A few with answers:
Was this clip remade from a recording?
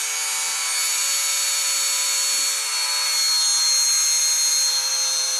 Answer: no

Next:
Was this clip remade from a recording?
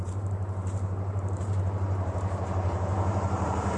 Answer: yes